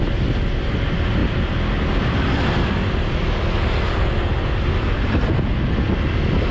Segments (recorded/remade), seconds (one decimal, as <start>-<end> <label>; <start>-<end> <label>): 0.0-6.5 recorded